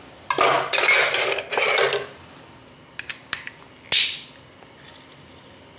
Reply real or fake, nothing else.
real